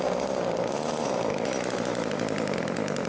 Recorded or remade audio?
recorded